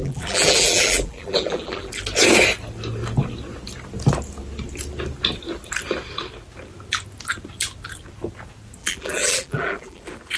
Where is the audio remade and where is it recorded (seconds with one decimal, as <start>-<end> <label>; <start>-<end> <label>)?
0.0-1.9 remade; 1.9-8.8 recorded; 8.8-10.0 remade; 10.0-10.4 recorded